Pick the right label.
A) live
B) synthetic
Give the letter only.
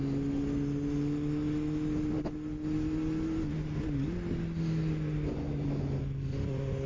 A